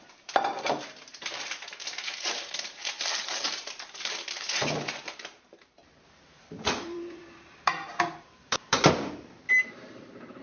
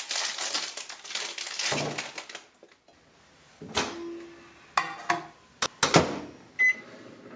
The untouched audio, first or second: second